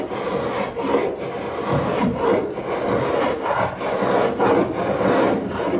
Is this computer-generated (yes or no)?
no